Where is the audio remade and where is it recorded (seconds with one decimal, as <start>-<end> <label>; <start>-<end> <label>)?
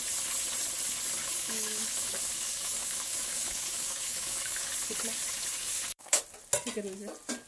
0.0-1.2 recorded; 1.2-4.7 remade; 4.7-5.6 recorded; 5.6-6.2 remade; 6.2-7.5 recorded